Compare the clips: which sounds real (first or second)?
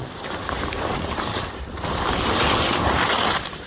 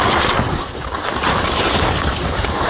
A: second